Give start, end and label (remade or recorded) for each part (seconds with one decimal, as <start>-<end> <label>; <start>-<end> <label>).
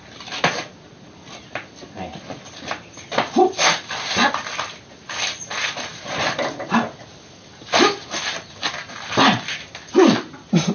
0.0-10.7 recorded